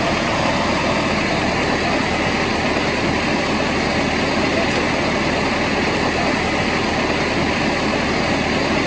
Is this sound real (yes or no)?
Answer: yes